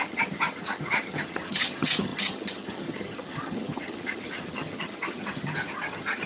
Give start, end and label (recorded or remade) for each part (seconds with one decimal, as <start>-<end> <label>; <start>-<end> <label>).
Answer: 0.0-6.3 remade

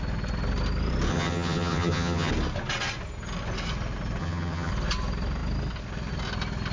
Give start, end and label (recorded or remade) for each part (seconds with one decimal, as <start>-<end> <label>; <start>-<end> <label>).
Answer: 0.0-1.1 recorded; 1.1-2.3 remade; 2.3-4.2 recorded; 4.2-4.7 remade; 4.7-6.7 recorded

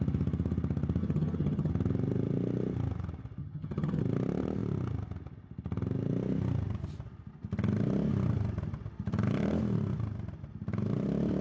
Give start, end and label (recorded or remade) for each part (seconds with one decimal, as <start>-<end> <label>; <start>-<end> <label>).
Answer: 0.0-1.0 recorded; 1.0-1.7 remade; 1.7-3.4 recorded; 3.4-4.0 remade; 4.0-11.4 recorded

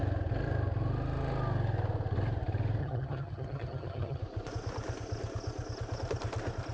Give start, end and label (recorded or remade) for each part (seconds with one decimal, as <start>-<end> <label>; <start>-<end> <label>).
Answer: 0.0-2.8 recorded; 2.8-4.2 remade; 4.2-6.7 recorded

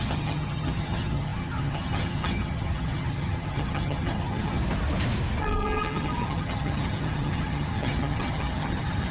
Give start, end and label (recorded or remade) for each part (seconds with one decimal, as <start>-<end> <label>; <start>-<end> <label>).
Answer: 0.0-4.6 remade; 4.6-5.4 recorded; 5.4-9.1 remade